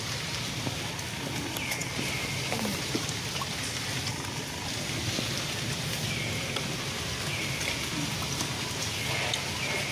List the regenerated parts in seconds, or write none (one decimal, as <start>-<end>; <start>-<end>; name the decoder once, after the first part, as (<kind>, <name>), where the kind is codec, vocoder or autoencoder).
none